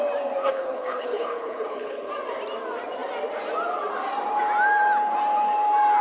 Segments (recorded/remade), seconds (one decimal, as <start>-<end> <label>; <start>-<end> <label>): 0.0-0.4 recorded; 0.4-2.1 remade; 2.1-6.0 recorded